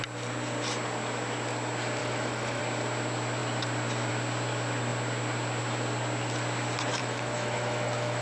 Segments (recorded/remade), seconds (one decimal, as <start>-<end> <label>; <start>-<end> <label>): 0.0-2.0 recorded; 2.0-2.6 remade; 2.6-7.0 recorded; 7.0-8.2 remade